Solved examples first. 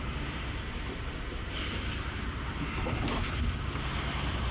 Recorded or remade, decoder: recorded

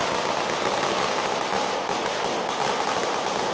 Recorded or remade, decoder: recorded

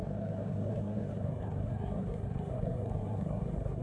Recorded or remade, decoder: remade, codec, SNAC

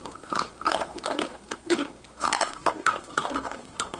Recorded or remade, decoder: remade, codec, SNAC